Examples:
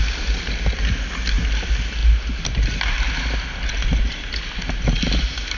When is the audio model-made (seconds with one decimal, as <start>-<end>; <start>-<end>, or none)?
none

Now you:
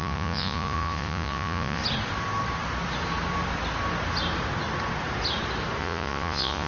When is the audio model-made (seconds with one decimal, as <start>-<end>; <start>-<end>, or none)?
0.0-1.8; 5.8-6.7

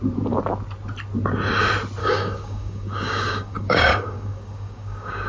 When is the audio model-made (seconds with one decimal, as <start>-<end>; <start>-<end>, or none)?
2.0-5.3

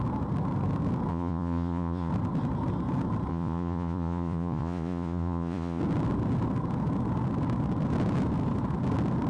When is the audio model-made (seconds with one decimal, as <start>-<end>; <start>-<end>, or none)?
1.1-2.1; 3.3-5.8

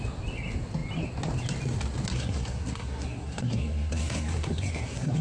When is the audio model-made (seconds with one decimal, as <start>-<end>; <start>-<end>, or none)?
2.1-5.2